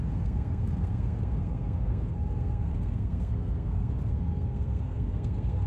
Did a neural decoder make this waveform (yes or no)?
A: yes